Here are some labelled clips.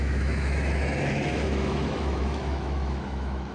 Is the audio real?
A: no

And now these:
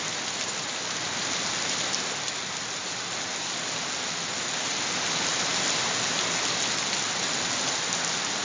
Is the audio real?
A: yes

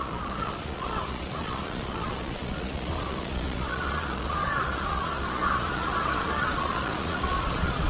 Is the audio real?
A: no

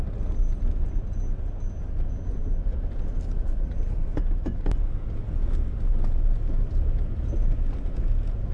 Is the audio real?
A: yes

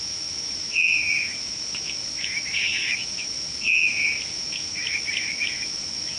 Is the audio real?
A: no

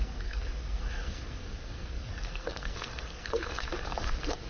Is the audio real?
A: no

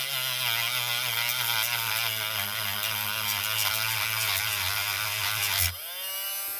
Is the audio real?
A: yes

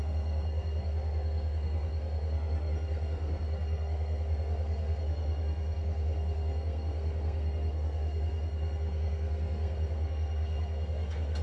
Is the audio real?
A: no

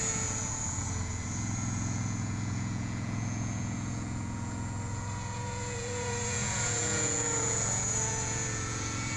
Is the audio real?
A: no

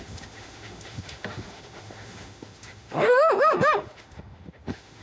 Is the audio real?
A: no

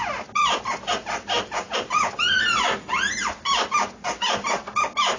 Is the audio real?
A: yes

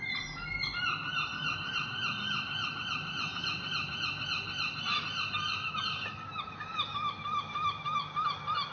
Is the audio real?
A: yes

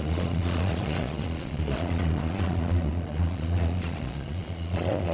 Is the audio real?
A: no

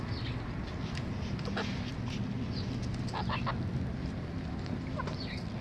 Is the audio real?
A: yes